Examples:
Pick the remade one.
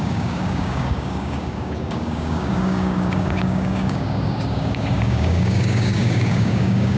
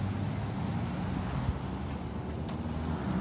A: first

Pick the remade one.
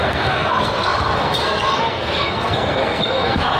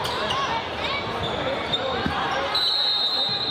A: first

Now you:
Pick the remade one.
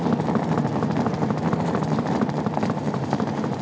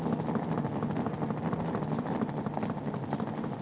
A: first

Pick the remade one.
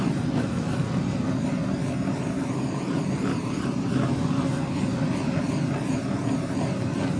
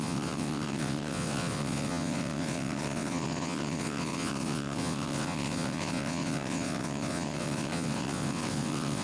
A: second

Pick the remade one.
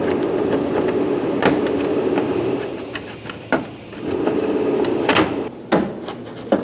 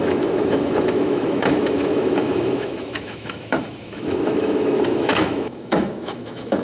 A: second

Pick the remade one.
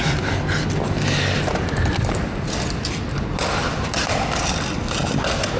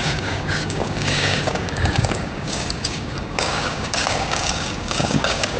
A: second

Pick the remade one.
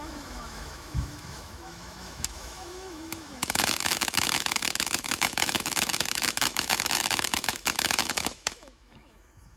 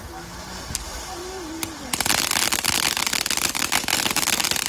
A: first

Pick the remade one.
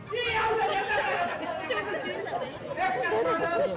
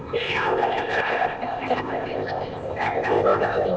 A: second